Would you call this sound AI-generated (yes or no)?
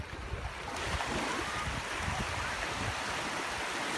no